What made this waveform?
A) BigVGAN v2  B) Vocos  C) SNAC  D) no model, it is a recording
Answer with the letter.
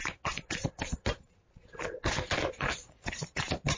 D